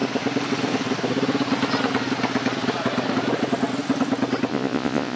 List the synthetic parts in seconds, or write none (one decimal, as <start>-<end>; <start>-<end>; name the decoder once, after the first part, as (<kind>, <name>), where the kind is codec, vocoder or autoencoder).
4.5-5.2 (vocoder, Vocos)